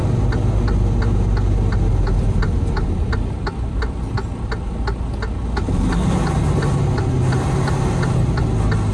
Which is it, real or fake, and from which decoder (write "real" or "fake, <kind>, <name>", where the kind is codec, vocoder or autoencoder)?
real